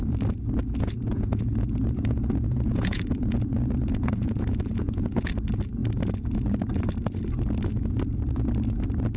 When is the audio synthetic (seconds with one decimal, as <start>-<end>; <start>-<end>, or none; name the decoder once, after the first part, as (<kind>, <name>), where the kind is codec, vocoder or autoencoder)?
0.6-5.2 (vocoder, Vocos)